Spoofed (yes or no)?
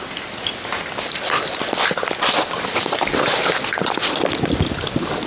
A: no